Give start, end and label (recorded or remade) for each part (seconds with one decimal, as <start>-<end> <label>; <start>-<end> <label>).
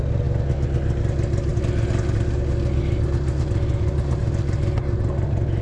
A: 0.0-5.6 recorded